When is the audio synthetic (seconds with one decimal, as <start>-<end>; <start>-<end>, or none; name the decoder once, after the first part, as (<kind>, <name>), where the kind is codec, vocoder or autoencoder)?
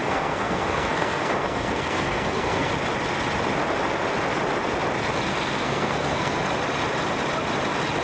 0.0-2.7 (codec, SNAC); 5.3-6.4